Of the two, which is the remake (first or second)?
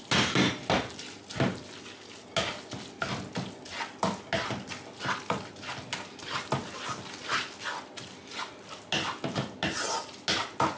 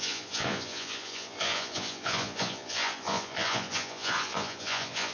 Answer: second